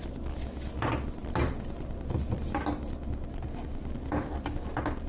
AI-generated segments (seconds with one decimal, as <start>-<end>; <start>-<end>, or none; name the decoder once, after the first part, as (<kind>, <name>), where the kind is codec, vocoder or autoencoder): none